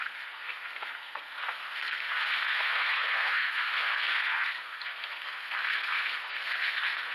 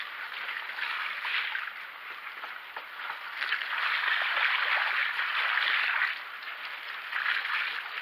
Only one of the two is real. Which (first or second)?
second